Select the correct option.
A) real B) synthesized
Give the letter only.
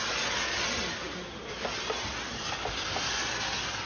A